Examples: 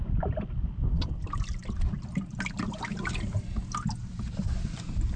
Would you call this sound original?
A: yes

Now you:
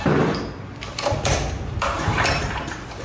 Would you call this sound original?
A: no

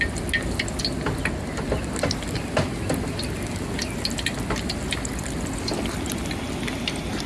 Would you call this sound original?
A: yes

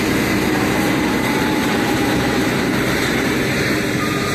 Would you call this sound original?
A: no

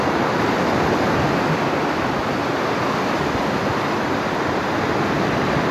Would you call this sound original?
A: yes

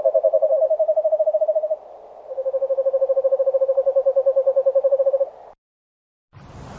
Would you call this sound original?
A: yes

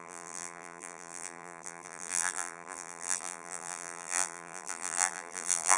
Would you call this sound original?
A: no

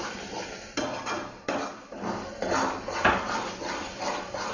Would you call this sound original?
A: yes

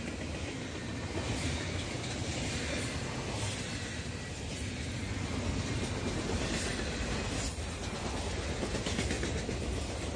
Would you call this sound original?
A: yes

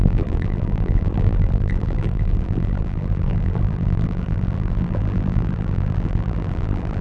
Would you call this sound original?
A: no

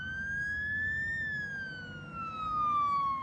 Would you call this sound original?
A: yes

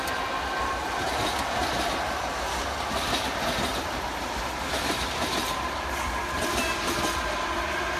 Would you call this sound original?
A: yes